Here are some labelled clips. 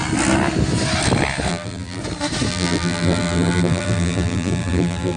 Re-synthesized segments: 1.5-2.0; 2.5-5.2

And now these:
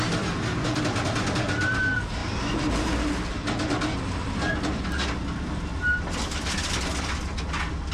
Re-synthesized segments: 2.2-3.0

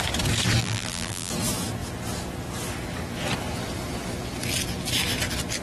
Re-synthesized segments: 0.6-1.3